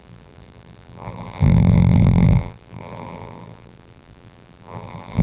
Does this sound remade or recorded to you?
remade